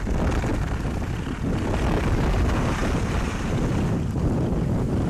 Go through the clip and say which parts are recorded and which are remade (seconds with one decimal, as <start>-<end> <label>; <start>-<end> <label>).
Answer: 0.0-5.1 recorded